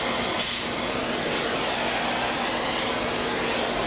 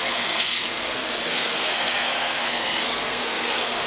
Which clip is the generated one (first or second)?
second